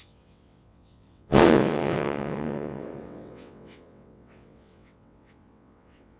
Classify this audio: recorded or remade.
remade